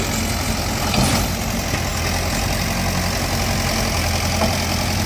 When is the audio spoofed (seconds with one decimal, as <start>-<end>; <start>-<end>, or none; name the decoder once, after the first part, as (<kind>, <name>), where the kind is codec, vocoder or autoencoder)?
none